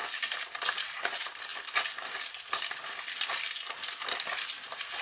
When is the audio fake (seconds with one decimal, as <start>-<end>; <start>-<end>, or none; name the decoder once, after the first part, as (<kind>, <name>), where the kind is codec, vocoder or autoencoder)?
0.7-1.5 (vocoder, BigVGAN v2); 4.5-5.0